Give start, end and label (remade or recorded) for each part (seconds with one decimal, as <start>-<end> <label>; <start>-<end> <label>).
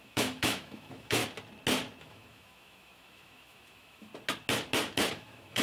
0.0-1.2 remade; 1.2-2.0 recorded; 2.0-4.1 remade; 4.1-5.1 recorded; 5.1-5.6 remade